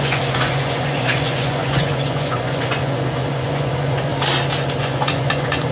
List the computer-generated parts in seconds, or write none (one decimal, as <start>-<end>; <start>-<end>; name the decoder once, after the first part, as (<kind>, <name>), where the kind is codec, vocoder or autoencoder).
0.0-4.1 (vocoder, Vocos); 4.8-5.7